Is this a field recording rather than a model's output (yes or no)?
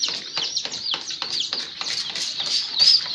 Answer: yes